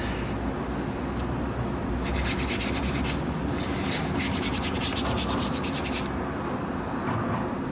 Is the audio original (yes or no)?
yes